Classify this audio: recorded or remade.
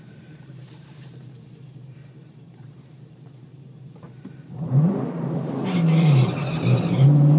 remade